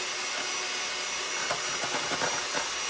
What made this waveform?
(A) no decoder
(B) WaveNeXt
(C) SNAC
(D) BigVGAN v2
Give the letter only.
A